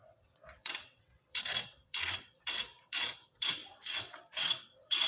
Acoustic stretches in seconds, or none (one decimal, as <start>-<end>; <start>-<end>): none